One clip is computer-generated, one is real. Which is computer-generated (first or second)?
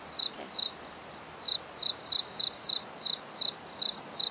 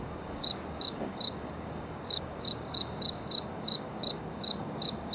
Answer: second